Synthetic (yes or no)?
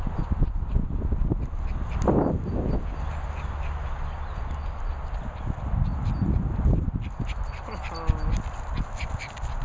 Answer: no